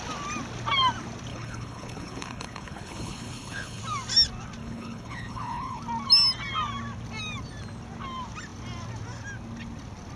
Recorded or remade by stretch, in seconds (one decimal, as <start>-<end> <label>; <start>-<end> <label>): 0.0-1.3 recorded; 1.3-3.8 remade; 3.8-4.6 recorded; 4.6-5.8 remade; 5.8-10.2 recorded